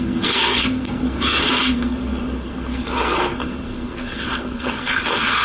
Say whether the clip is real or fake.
fake